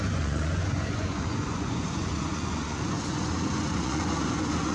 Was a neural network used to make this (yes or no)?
yes